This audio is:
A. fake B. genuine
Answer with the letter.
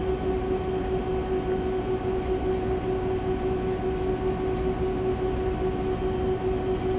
B